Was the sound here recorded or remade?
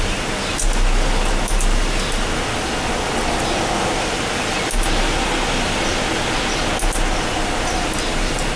recorded